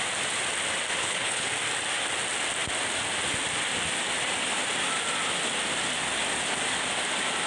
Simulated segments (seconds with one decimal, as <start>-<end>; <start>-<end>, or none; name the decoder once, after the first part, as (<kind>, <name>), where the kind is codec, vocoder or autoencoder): 1.0-1.5 (codec, HILCodec)